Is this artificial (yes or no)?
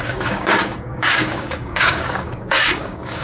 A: yes